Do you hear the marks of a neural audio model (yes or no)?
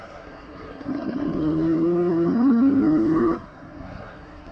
yes